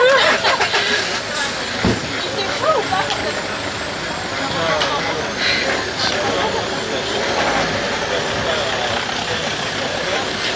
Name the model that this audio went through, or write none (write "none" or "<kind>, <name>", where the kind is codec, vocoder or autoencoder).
none